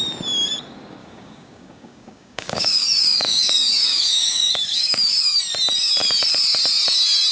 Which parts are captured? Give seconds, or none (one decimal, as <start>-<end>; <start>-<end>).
0.0-1.0; 5.4-7.3